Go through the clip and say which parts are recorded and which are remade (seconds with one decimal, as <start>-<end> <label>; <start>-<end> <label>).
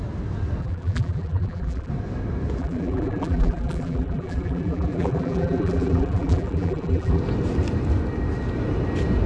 0.0-0.6 recorded; 0.6-1.9 remade; 1.9-2.6 recorded; 2.6-7.2 remade; 7.2-9.3 recorded